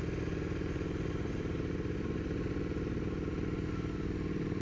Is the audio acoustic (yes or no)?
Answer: yes